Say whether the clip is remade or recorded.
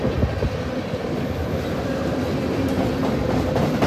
recorded